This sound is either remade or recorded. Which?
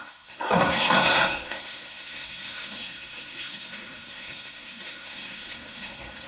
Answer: remade